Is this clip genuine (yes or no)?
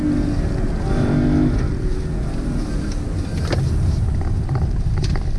yes